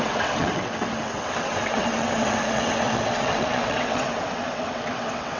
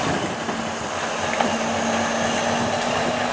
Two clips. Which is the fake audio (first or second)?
first